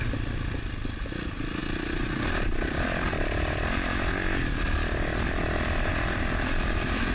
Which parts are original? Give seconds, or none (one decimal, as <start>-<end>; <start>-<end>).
0.0-7.1